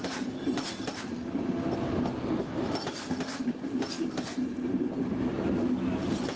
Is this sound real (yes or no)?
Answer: yes